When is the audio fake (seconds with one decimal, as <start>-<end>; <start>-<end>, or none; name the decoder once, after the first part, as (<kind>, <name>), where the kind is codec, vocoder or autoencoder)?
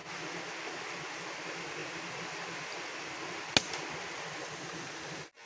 none